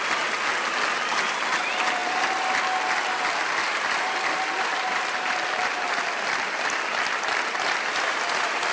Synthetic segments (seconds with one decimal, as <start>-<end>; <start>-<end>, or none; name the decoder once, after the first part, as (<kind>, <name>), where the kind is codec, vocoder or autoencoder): none